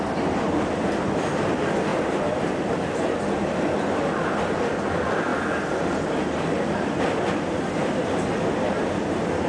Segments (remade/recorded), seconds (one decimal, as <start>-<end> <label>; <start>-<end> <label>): 0.0-1.9 recorded; 1.9-4.0 remade; 4.0-7.8 recorded; 7.8-8.5 remade; 8.5-9.5 recorded